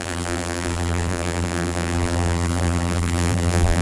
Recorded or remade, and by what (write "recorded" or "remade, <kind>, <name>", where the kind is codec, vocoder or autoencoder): remade, vocoder, BigVGAN v2